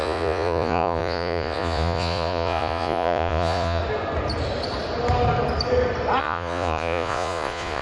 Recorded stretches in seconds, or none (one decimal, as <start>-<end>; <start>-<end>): 3.8-6.2